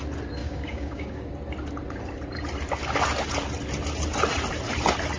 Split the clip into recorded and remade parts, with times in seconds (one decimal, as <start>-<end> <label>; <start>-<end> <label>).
0.0-0.4 recorded; 0.4-1.3 remade; 1.3-5.2 recorded